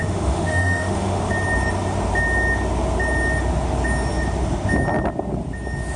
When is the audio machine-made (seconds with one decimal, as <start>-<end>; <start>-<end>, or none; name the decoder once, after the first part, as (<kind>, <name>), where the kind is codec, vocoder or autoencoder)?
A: 0.0-1.2 (autoencoder, DAC-VAE)